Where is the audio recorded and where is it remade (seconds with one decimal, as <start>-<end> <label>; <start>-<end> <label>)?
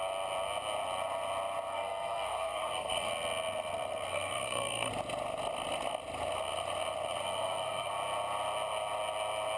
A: 0.0-1.7 recorded; 1.7-3.1 remade; 3.1-4.1 recorded; 4.1-4.9 remade; 4.9-7.2 recorded; 7.2-7.9 remade; 7.9-9.6 recorded